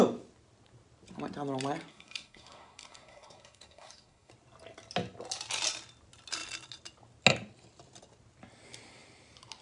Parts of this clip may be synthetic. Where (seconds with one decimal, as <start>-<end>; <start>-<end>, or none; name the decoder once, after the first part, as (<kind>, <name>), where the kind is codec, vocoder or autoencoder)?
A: 1.9-4.3 (codec, SNAC)